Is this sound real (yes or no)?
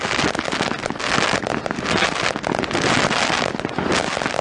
yes